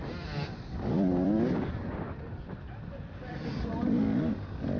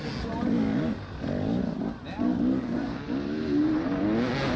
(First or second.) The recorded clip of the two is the second